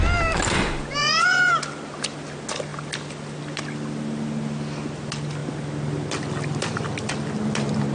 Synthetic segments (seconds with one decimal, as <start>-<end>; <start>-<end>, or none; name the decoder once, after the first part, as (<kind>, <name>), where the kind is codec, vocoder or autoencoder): 1.0-1.5 (vocoder, Vocos)